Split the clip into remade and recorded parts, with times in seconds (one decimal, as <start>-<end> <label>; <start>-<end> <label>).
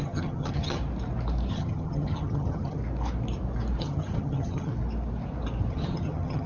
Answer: 0.0-0.8 remade; 0.8-1.5 recorded; 1.5-2.8 remade; 2.8-3.8 recorded; 3.8-4.7 remade; 4.7-5.7 recorded; 5.7-6.5 remade